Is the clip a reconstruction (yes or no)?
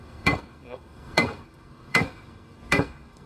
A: yes